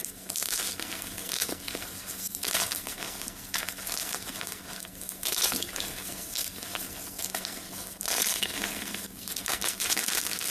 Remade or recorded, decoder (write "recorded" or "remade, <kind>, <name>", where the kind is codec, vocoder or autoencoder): remade, codec, SNAC